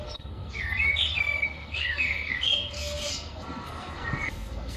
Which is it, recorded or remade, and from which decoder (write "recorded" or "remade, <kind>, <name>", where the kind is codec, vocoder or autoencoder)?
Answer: remade, codec, SNAC